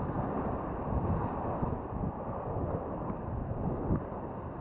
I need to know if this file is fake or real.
fake